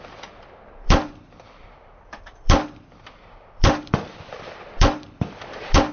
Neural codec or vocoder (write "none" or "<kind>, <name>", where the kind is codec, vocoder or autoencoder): vocoder, BigVGAN v2